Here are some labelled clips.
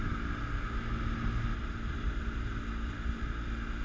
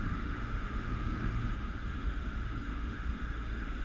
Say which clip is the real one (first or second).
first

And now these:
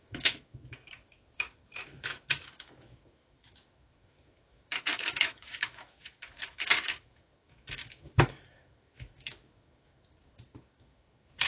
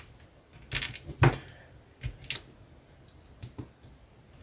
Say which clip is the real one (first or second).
second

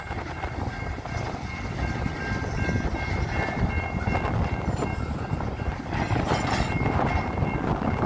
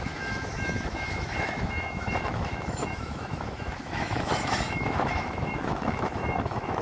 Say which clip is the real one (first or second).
first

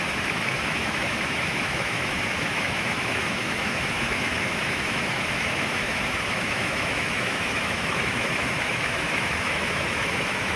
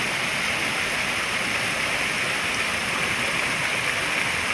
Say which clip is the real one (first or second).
second